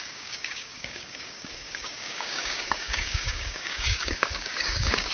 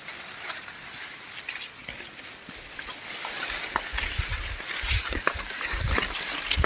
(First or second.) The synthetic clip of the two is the first